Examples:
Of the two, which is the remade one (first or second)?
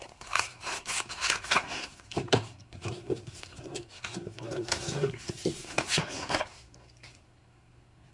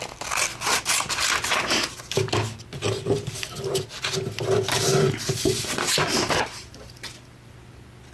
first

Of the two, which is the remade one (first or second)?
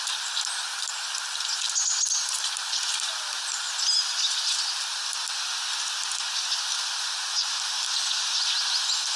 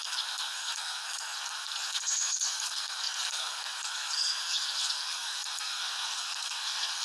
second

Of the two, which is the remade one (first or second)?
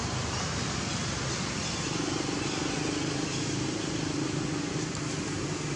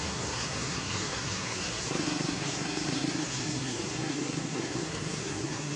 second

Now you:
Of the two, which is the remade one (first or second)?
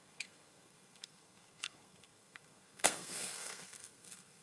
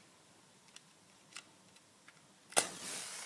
first